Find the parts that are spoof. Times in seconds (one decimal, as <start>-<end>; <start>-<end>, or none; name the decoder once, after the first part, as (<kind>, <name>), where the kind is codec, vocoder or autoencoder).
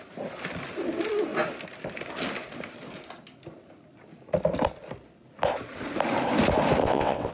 6.8-7.3 (vocoder, WaveNeXt)